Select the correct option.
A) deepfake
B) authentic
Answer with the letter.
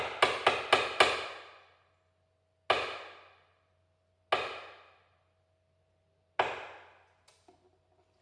B